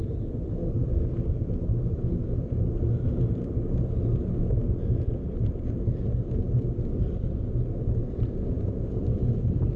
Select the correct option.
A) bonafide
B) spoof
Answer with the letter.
A